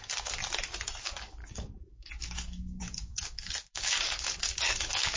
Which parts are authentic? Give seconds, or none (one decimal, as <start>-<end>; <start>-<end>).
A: 0.4-1.0